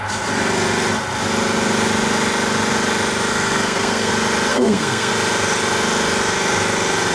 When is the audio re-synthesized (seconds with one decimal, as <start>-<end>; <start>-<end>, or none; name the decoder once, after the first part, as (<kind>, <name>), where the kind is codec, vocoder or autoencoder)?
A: 3.3-4.1 (codec, SNAC); 4.5-5.1